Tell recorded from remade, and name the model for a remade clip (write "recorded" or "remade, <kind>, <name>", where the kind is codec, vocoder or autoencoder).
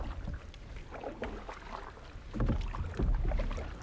recorded